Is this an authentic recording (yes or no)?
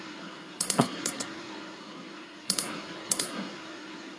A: no